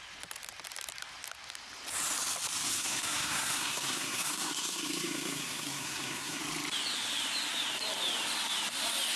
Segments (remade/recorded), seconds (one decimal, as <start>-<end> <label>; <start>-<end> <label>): 0.0-2.7 recorded; 2.7-6.4 remade; 6.4-9.2 recorded